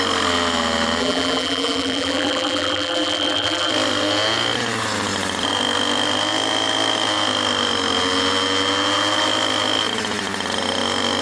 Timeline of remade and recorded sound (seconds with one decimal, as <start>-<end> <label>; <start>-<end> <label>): 0.0-1.0 recorded; 1.0-3.7 remade; 3.7-11.2 recorded